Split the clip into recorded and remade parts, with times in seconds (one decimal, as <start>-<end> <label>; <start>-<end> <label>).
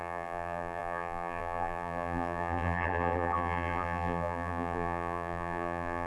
0.0-6.1 remade